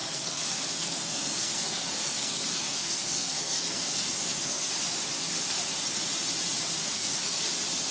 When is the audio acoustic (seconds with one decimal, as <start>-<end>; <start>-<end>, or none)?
4.7-6.8; 7.4-7.9